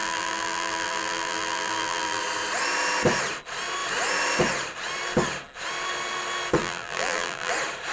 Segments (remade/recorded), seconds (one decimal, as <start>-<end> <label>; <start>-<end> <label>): 0.0-2.2 remade; 2.2-6.6 recorded; 6.6-7.5 remade; 7.5-7.9 recorded